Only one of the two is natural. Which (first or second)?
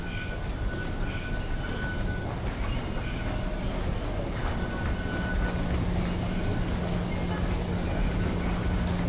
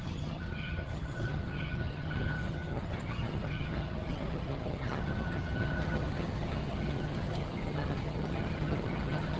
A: first